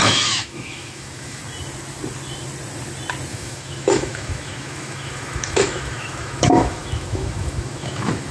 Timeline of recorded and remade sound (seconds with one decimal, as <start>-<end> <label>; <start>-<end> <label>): 0.0-1.4 remade; 1.4-3.3 recorded; 3.3-8.3 remade